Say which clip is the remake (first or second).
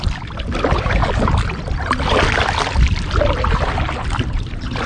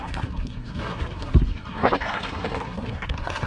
second